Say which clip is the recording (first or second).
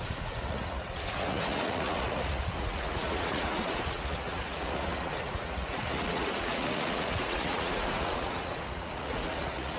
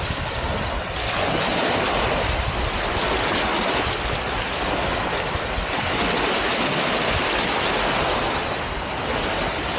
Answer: second